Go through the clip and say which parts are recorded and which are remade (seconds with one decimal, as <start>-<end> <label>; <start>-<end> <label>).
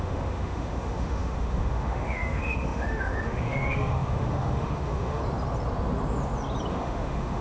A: 0.0-5.2 remade; 5.2-6.7 recorded; 6.7-7.4 remade